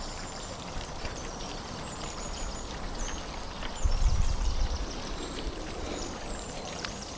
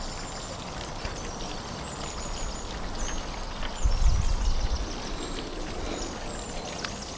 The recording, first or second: second